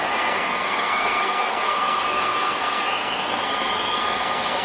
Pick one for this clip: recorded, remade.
remade